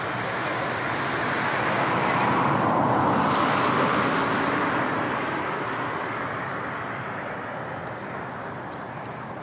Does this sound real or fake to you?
real